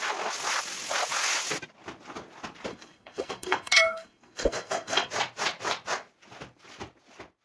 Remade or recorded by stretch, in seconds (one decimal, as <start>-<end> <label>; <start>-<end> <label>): 0.0-2.7 recorded; 2.7-5.1 remade; 5.1-7.4 recorded